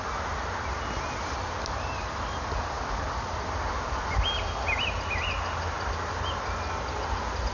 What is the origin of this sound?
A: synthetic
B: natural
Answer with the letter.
B